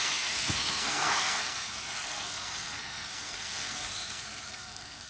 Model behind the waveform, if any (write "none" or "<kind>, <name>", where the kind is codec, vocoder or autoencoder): codec, SNAC